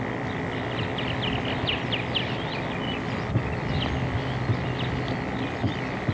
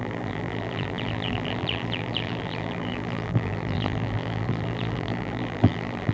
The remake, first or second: second